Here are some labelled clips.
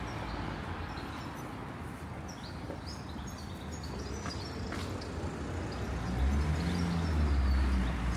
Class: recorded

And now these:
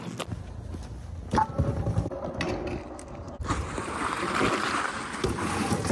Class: recorded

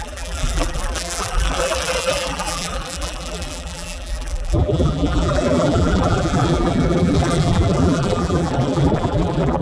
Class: remade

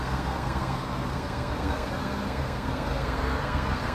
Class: remade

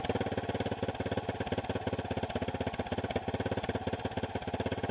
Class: recorded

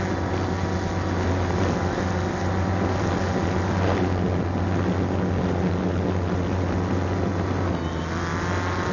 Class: recorded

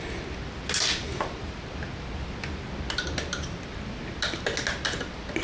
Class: recorded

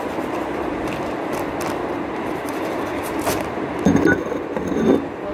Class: recorded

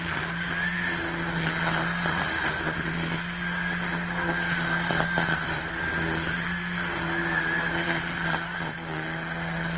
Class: recorded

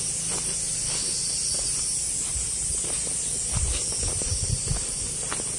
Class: recorded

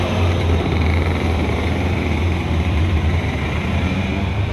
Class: remade